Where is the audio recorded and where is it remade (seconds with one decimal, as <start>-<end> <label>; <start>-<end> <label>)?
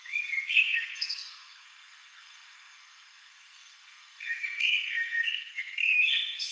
0.0-6.5 remade